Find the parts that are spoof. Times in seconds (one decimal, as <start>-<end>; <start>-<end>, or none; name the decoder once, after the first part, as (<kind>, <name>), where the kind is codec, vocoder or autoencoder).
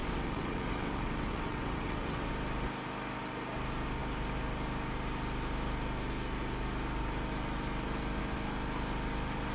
0.0-2.3 (vocoder, WaveNeXt)